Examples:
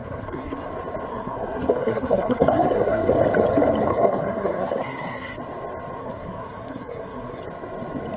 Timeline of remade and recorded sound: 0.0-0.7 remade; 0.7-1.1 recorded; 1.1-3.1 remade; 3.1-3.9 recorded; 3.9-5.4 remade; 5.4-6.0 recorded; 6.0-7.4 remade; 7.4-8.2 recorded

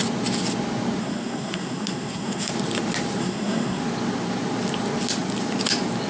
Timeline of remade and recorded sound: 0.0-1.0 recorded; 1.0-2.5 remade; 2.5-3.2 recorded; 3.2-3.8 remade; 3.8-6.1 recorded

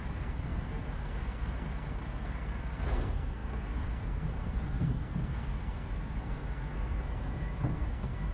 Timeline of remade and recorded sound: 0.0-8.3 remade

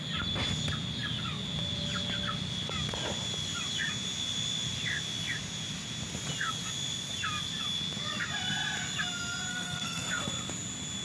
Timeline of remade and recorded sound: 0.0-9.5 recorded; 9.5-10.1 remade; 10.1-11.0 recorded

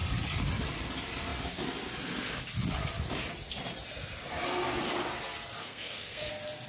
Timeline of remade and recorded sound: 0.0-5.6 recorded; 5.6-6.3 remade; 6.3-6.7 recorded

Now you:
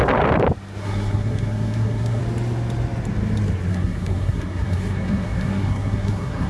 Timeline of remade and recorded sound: 0.0-0.8 recorded; 0.8-2.2 remade; 2.2-3.7 recorded; 3.7-6.5 remade

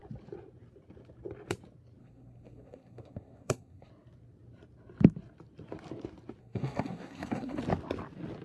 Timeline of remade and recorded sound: 0.0-2.0 recorded; 2.0-3.9 remade; 3.9-6.4 recorded; 6.4-7.6 remade; 7.6-8.4 recorded

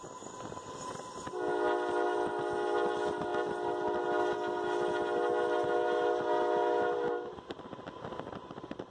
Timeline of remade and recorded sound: 0.0-8.9 recorded